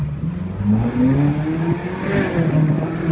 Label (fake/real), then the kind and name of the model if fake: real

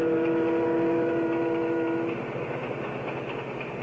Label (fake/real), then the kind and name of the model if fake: real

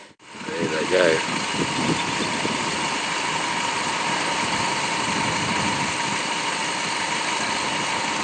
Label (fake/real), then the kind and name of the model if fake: fake, vocoder, BigVGAN v2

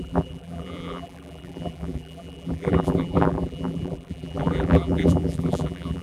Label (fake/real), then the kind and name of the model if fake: fake, vocoder, BigVGAN v2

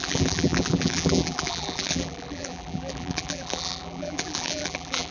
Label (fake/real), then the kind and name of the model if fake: fake, vocoder, BigVGAN v2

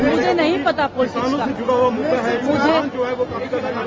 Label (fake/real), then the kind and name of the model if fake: real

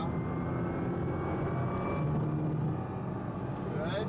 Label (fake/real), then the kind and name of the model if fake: real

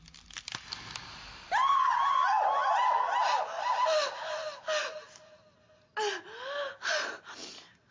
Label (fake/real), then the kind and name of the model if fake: real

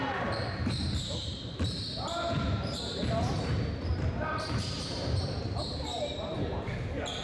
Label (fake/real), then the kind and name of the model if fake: fake, vocoder, BigVGAN v2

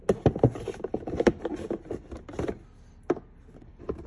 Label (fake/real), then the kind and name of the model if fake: real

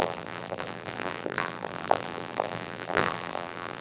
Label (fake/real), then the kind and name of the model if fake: fake, vocoder, BigVGAN v2